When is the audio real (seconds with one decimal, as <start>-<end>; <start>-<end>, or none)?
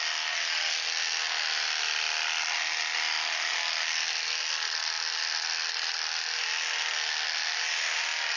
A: 0.0-8.4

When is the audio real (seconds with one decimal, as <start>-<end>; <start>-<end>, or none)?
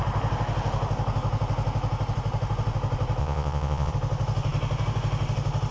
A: 0.0-3.2; 3.9-5.7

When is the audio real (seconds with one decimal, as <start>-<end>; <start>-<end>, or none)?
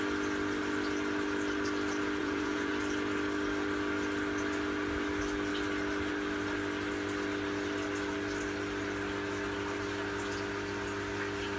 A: 0.0-2.2; 2.7-11.6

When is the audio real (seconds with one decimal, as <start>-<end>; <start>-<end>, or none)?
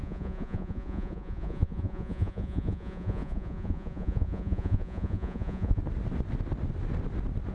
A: 5.8-7.5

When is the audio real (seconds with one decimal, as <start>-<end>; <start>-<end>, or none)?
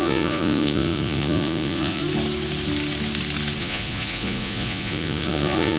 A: 2.0-3.6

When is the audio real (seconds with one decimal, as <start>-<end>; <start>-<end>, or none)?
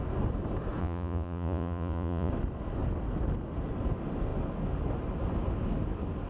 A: 0.0-0.8; 2.3-6.3